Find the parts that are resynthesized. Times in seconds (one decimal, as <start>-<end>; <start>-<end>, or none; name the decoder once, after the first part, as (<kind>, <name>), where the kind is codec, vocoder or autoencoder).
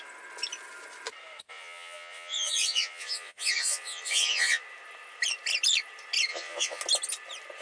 1.4-4.6 (vocoder, Vocos); 6.3-6.8